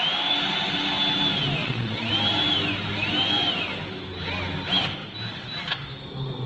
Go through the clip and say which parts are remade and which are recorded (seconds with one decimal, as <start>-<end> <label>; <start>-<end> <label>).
0.0-1.6 recorded; 1.6-2.1 remade; 2.1-6.5 recorded

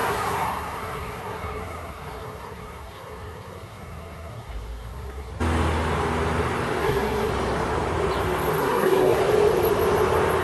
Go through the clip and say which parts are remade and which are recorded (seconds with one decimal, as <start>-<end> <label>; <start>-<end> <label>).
0.0-5.3 remade; 5.3-6.8 recorded; 6.8-7.3 remade; 7.3-8.6 recorded; 8.6-9.2 remade; 9.2-10.4 recorded

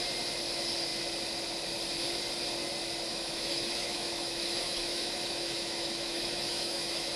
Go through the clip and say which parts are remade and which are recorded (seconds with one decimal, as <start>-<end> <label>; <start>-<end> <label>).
0.0-3.1 recorded; 3.1-7.2 remade

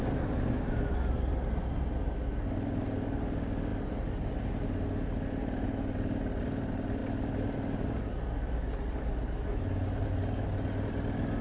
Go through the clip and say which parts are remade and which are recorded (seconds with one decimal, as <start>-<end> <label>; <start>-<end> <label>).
0.0-11.4 recorded

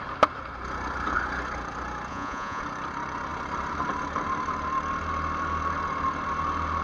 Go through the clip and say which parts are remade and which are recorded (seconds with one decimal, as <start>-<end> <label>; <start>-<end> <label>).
0.0-2.1 recorded; 2.1-2.6 remade; 2.6-6.8 recorded

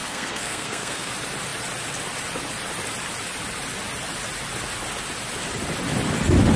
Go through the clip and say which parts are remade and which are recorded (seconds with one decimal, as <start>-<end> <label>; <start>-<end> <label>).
0.0-1.1 remade; 1.1-6.6 recorded

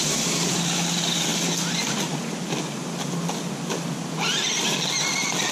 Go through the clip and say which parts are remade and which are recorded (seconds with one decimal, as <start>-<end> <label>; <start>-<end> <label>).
0.0-5.5 recorded